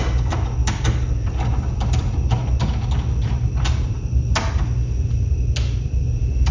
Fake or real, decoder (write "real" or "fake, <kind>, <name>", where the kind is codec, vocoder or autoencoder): real